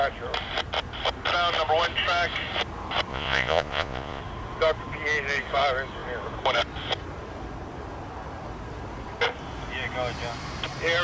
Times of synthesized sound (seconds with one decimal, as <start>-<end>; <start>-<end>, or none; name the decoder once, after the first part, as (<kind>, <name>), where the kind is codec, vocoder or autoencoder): 3.1-4.2 (vocoder, Vocos)